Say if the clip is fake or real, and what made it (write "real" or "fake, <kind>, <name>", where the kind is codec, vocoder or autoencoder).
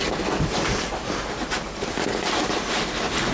real